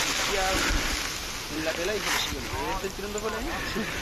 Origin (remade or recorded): recorded